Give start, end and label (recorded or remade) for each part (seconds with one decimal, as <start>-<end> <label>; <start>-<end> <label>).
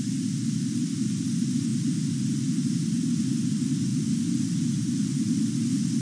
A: 0.0-3.9 recorded; 3.9-5.4 remade; 5.4-6.0 recorded